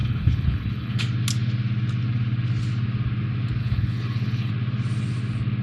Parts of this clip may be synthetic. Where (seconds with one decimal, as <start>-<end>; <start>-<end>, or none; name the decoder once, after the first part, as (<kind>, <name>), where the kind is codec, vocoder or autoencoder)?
0.0-1.0 (codec, HILCodec); 3.6-4.5